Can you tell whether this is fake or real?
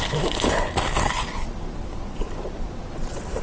real